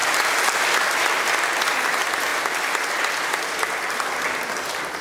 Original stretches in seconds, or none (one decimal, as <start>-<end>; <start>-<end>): 0.0-5.0